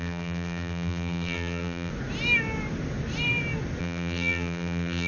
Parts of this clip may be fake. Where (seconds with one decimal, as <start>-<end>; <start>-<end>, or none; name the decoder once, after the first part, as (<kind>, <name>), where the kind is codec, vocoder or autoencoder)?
0.0-1.9 (vocoder, BigVGAN v2); 3.8-5.1